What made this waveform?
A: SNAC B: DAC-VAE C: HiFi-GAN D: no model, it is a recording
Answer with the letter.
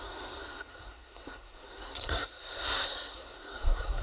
A